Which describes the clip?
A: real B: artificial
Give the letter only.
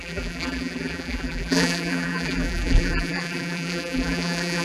B